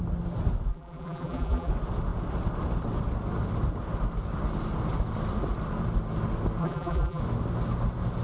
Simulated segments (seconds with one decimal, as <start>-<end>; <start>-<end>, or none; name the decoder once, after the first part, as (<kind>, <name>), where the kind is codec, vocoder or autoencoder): 0.7-1.7 (vocoder, BigVGAN v2); 6.6-7.2